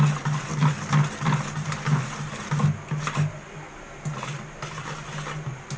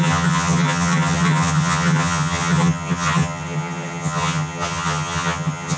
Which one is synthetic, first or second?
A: second